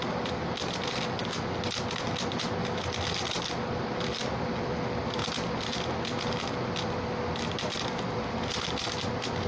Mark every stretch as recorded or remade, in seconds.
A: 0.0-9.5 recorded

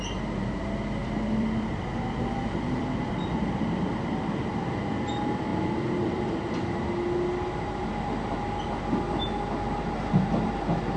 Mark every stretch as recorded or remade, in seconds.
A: 0.0-1.0 recorded; 1.0-4.9 remade; 4.9-5.5 recorded; 5.5-6.3 remade; 6.3-11.0 recorded

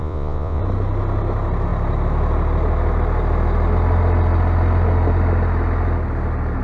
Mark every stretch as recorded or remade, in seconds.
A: 0.0-0.6 remade; 0.6-6.6 recorded

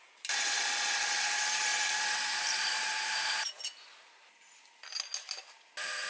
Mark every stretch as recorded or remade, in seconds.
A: 0.0-1.7 recorded; 1.7-3.6 remade; 3.6-6.1 recorded

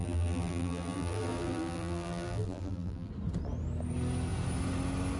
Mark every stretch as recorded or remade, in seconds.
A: 0.0-3.1 remade; 3.1-5.2 recorded

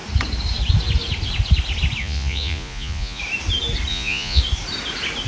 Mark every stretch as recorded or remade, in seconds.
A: 0.0-2.0 recorded; 2.0-3.2 remade; 3.2-3.9 recorded; 3.9-4.4 remade; 4.4-5.3 recorded

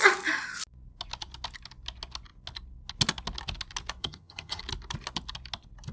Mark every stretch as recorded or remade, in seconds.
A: 0.0-4.0 recorded; 4.0-4.6 remade; 4.6-5.9 recorded

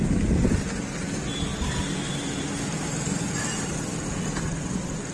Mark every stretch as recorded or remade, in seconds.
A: 0.0-5.1 recorded